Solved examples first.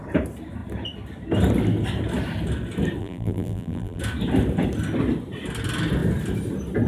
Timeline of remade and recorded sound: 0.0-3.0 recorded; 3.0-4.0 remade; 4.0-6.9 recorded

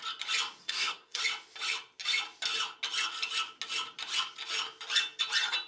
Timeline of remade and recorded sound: 0.0-0.6 recorded; 0.6-1.2 remade; 1.2-5.7 recorded

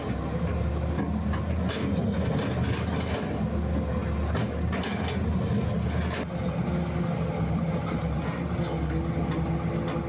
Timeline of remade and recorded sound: 0.0-10.1 recorded

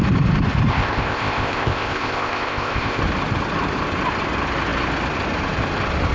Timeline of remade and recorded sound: 0.0-0.7 recorded; 0.7-3.0 remade; 3.0-6.1 recorded

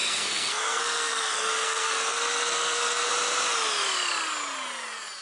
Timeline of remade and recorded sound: 0.0-3.1 remade; 3.1-5.2 recorded